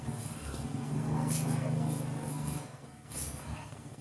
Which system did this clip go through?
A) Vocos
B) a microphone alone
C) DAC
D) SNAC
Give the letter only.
D